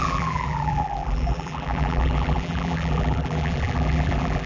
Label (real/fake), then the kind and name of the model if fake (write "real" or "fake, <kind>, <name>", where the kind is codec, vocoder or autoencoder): fake, vocoder, BigVGAN v2